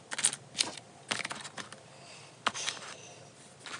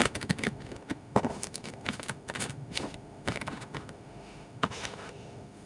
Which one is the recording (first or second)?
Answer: first